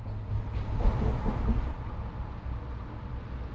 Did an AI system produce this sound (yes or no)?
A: no